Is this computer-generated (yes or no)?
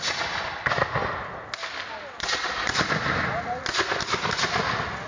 no